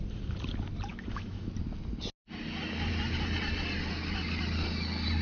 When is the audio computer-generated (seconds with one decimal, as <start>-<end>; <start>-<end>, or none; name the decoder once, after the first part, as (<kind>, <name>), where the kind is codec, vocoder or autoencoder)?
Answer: 0.9-1.5 (autoencoder, DAC-VAE)